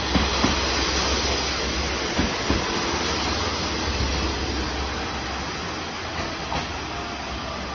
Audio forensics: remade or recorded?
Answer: recorded